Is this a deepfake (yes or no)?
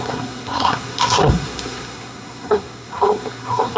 yes